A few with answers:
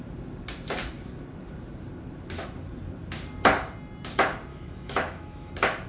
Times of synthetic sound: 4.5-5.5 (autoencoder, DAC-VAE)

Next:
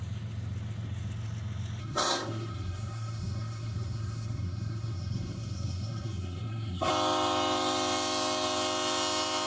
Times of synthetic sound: 1.8-6.9 (codec, SNAC)

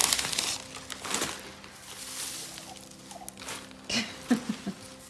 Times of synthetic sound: none

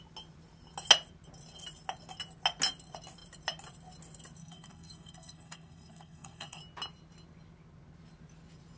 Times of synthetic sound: 4.4-6.6 (codec, SNAC)

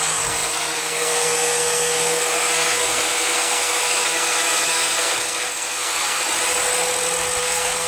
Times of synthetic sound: 0.0-6.2 (codec, SNAC); 7.4-7.9

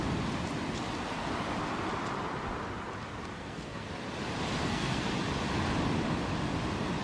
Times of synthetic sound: 3.2-3.9 (codec, SNAC); 4.6-5.1

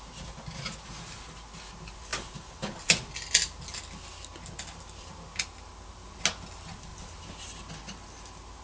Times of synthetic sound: none

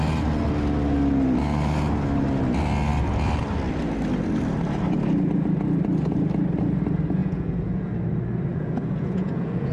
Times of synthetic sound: 7.2-7.9 (vocoder, Vocos); 8.5-9.7